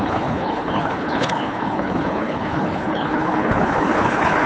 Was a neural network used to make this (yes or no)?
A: yes